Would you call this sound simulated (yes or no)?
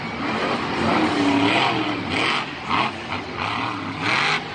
no